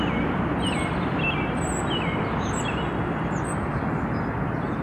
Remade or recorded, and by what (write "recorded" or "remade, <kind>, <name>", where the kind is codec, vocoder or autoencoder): recorded